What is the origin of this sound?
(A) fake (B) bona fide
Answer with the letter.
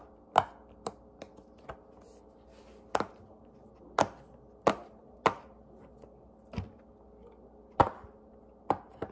B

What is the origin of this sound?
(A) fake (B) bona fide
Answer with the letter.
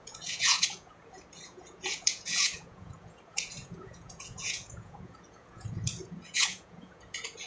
A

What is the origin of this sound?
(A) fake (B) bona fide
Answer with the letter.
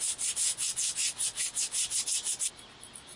B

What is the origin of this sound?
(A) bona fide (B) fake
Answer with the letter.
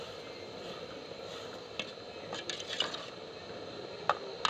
A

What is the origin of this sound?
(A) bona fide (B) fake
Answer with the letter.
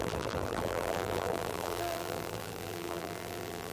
B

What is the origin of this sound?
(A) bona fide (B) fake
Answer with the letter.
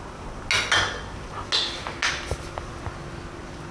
A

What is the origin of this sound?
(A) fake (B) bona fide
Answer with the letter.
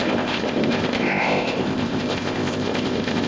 A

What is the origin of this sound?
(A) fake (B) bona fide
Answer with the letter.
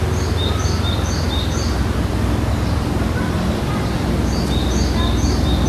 B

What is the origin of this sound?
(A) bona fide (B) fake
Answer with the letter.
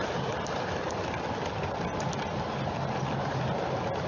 A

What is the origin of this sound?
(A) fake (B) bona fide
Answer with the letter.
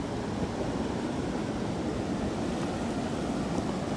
B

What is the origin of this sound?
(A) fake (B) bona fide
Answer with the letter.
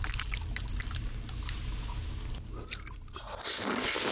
B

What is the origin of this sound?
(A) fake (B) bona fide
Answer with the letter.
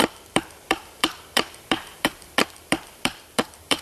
A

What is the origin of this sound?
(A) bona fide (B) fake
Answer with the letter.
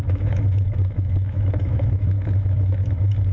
B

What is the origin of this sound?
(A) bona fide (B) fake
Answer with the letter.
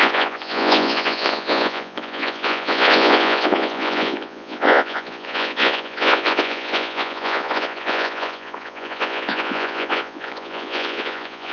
B